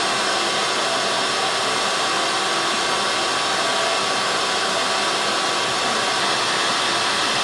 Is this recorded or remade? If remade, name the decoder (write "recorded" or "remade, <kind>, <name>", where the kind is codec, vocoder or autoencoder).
recorded